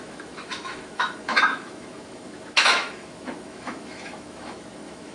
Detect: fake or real fake